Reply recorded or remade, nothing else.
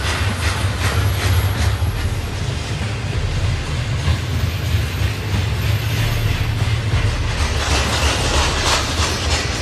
recorded